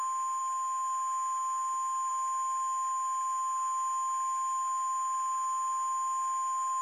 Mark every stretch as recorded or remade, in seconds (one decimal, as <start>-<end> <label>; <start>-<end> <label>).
0.0-6.8 recorded